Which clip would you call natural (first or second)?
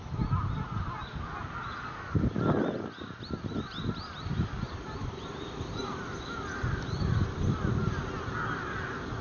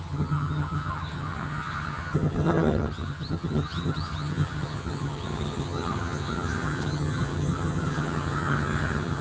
first